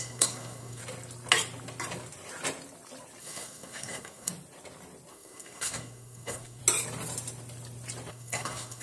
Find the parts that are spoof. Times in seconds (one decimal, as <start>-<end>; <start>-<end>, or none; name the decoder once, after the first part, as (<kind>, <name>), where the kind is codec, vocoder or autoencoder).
0.0-0.8 (codec, SNAC); 3.2-4.3; 5.1-6.6; 8.1-8.8